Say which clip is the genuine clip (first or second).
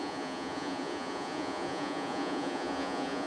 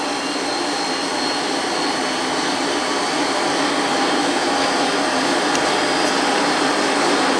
second